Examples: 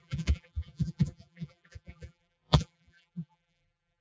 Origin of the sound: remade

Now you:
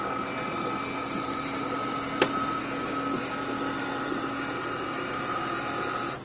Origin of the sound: recorded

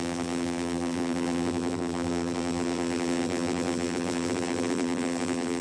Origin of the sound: remade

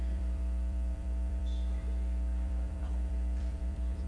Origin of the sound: remade